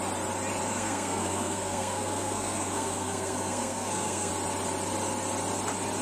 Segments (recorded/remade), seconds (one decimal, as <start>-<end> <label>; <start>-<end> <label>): 0.0-0.7 recorded; 0.7-4.3 remade; 4.3-6.0 recorded